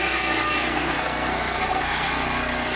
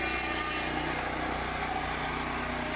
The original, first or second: second